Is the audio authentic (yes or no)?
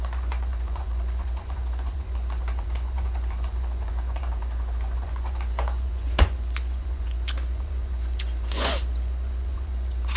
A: no